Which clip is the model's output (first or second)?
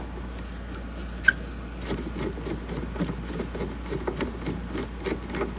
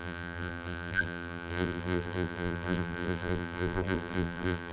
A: second